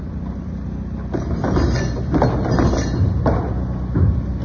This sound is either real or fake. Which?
real